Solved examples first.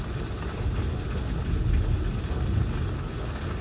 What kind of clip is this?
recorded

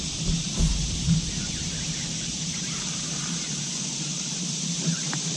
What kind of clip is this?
remade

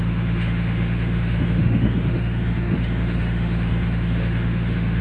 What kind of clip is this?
remade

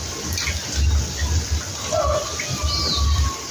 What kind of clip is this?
recorded